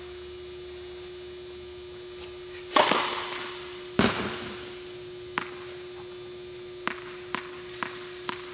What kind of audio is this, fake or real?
real